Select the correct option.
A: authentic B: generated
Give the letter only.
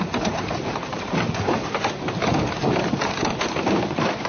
B